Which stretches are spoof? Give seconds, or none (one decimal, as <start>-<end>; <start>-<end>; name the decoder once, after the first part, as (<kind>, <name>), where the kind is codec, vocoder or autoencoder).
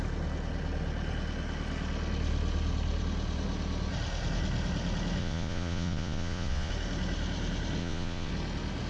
5.2-6.7 (vocoder, Vocos); 7.8-8.3